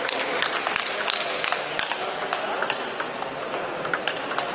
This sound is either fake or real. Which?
real